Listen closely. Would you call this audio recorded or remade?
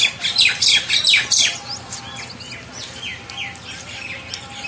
recorded